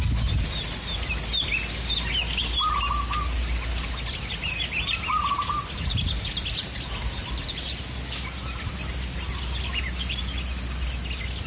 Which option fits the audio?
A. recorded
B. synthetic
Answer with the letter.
A